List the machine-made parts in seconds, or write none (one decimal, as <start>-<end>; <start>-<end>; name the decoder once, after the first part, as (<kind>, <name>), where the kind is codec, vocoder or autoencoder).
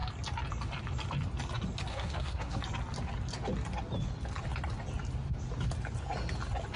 1.9-2.6 (codec, SNAC)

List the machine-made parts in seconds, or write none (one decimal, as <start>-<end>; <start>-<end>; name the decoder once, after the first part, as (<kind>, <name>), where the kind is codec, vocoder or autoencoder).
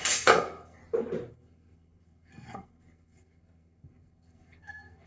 0.0-0.8 (codec, SNAC); 1.3-5.1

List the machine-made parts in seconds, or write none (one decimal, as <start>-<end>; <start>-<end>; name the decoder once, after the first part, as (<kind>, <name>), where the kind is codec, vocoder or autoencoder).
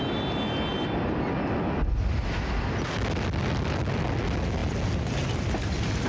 none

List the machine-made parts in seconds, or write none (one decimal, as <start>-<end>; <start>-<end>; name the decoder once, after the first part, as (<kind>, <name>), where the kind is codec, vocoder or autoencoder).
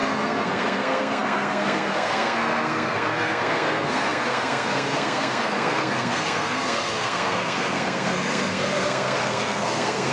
0.0-10.1 (codec, SNAC)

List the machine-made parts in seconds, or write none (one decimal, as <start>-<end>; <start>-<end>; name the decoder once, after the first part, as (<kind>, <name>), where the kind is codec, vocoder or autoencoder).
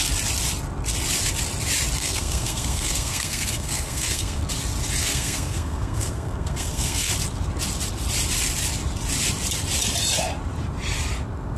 2.0-4.4 (codec, SNAC); 5.0-7.1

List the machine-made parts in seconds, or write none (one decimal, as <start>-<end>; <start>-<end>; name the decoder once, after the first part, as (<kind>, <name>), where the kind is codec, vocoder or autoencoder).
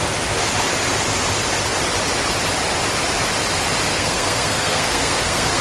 3.9-5.6 (codec, SNAC)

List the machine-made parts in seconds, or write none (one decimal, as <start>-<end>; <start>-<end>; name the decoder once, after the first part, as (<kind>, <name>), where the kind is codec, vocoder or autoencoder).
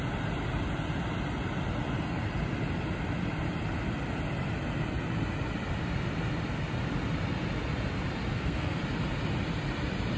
8.3-8.8 (codec, SNAC)